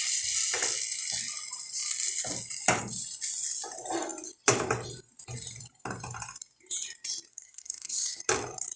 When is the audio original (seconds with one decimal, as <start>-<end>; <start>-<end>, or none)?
0.0-7.3; 8.2-8.8